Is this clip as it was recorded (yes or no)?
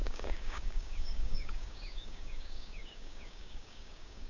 no